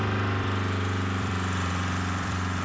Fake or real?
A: fake